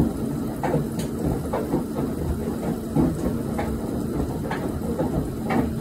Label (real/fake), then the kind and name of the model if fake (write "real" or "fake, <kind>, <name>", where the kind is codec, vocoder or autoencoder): real